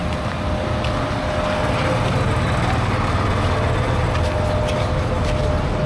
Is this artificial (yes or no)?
no